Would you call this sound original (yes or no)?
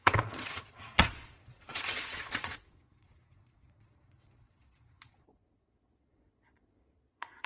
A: no